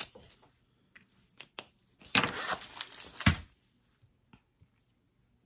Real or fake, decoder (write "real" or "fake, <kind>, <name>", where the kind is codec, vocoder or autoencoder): real